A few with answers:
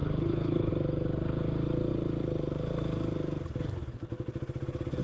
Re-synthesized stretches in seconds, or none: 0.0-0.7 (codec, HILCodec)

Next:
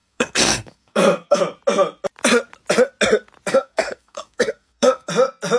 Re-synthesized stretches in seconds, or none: 0.0-1.4 (codec, SNAC); 3.5-5.1